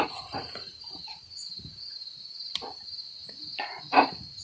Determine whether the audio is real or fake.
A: real